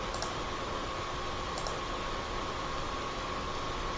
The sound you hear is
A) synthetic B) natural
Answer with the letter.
B